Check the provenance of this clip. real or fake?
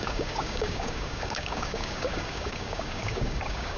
fake